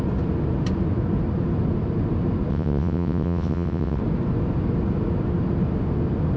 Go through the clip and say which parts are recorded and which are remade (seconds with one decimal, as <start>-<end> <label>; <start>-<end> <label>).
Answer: 0.0-2.5 recorded; 2.5-4.0 remade; 4.0-6.4 recorded